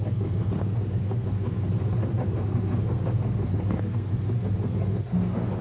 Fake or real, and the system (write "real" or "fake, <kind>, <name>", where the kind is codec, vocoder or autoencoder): fake, codec, SNAC